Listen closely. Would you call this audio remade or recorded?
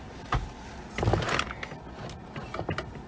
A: recorded